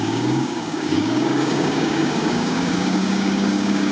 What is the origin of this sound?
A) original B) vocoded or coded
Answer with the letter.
B